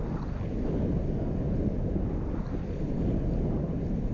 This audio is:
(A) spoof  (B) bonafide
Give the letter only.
B